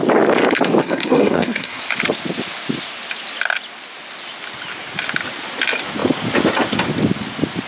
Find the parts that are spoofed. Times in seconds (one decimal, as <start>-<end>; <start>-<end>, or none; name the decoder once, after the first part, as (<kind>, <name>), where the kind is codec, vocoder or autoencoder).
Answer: 0.8-1.8 (codec, SNAC)

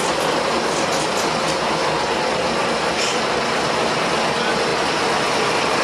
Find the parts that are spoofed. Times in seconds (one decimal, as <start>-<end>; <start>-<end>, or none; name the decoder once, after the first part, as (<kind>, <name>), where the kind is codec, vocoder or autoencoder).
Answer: none

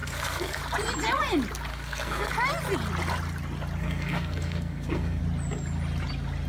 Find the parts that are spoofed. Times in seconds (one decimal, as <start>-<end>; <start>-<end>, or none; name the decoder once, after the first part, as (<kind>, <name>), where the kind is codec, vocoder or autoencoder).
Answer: 0.0-0.6 (codec, SNAC); 1.7-2.3; 3.8-5.2

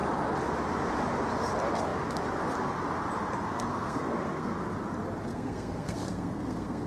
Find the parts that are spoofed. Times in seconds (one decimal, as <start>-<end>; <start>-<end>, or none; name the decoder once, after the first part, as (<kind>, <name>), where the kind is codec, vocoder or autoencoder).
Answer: 3.7-4.5 (codec, SNAC); 5.3-6.9

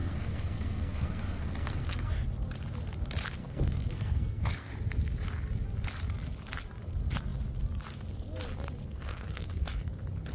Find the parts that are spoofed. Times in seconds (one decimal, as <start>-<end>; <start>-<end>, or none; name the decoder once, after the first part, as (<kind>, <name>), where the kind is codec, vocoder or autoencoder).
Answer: 0.0-2.1 (codec, SNAC); 3.4-4.7; 8.8-9.9

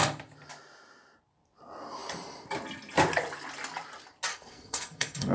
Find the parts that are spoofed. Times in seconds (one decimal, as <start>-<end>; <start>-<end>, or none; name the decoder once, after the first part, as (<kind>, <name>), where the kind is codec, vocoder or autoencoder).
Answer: 4.3-5.3 (codec, SNAC)

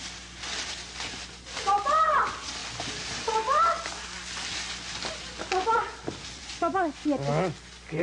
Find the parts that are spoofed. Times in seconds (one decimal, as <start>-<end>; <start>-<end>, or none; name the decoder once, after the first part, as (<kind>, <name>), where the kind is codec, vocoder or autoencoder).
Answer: none

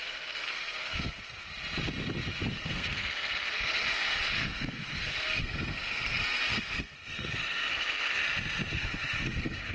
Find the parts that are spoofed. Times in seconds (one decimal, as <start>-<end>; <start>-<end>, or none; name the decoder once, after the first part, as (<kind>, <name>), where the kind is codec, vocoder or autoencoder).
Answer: 0.0-1.5 (codec, SNAC); 2.5-8.2; 8.7-9.7